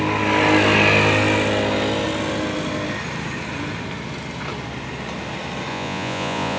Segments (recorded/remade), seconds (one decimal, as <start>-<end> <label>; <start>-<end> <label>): 0.0-5.7 recorded; 5.7-6.6 remade